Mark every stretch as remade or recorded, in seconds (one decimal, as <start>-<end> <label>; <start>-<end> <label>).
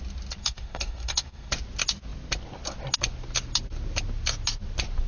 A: 0.0-0.4 recorded; 0.4-1.5 remade; 1.5-5.1 recorded